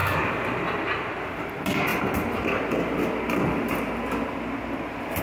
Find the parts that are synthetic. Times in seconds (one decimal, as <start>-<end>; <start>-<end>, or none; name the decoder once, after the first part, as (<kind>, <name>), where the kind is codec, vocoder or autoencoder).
none